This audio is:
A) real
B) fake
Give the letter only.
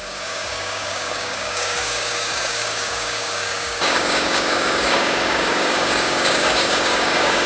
B